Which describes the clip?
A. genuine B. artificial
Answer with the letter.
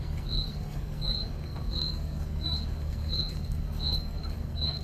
B